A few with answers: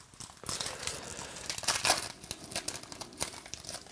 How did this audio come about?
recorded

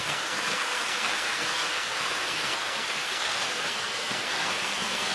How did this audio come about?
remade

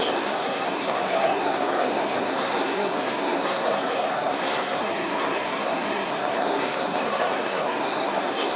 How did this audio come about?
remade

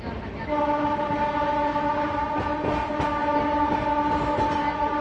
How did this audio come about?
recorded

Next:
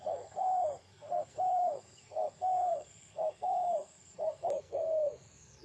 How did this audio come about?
remade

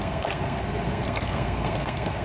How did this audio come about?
remade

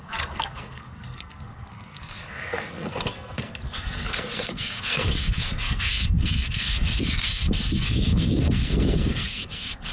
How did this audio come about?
remade